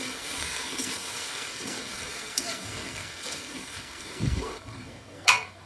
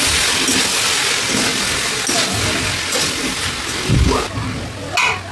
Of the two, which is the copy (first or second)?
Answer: first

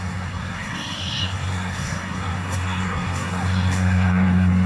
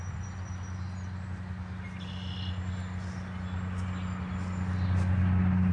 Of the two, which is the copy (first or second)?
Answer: first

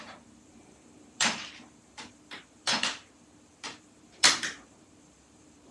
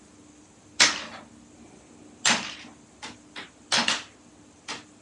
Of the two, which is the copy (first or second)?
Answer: first